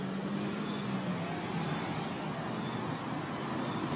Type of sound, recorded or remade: recorded